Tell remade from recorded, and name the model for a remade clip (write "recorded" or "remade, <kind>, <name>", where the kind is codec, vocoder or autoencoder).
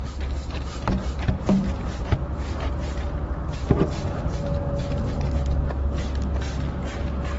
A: remade, vocoder, BigVGAN v2